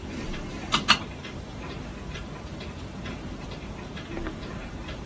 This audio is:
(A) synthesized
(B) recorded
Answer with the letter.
A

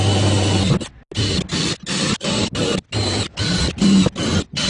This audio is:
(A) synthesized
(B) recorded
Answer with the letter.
B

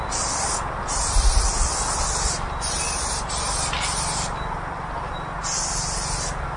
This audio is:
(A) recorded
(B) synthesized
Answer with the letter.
A